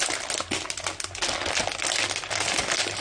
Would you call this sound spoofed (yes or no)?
no